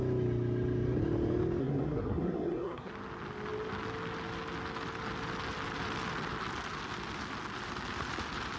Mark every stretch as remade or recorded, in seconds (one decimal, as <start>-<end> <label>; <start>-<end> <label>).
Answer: 0.0-1.6 recorded; 1.6-2.9 remade; 2.9-8.6 recorded